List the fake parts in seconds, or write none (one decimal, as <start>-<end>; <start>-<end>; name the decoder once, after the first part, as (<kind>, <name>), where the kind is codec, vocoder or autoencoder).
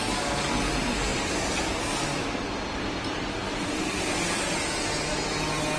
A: 1.1-4.4 (vocoder, BigVGAN v2)